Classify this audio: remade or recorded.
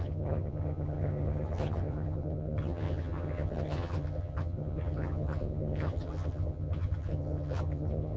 remade